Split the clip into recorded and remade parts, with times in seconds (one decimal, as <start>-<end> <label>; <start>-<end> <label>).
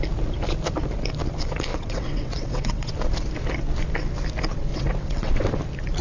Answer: 0.0-1.7 recorded; 1.7-2.9 remade; 2.9-4.7 recorded; 4.7-5.3 remade; 5.3-6.0 recorded